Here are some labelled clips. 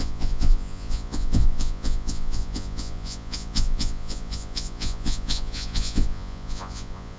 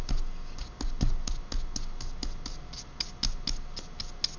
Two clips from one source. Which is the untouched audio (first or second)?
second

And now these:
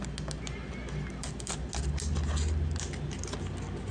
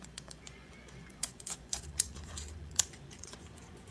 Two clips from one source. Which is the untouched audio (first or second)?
first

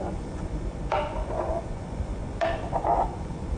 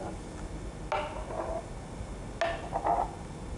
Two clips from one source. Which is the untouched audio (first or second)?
second